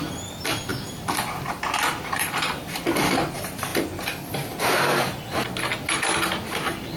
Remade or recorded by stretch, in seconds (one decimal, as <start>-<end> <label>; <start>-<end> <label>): 0.0-3.7 remade; 3.7-7.0 recorded